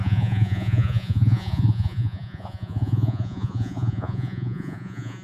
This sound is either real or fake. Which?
fake